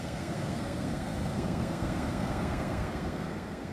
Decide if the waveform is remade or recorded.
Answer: remade